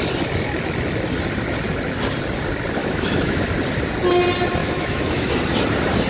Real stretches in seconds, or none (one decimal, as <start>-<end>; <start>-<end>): 0.0-2.8; 3.4-4.6; 5.3-6.1